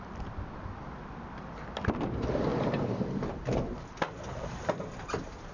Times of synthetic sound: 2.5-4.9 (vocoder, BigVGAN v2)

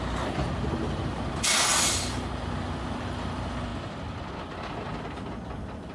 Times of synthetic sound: none